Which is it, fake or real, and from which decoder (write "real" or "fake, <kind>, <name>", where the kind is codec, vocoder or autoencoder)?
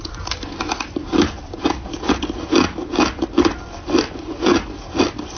real